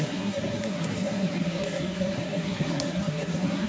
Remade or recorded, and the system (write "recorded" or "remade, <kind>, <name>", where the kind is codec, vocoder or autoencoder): remade, codec, SNAC